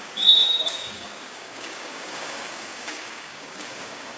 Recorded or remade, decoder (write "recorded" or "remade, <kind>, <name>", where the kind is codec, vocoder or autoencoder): remade, codec, DAC